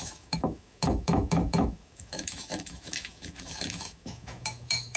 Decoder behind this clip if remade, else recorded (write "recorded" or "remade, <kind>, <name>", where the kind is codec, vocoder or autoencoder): remade, autoencoder, DAC-VAE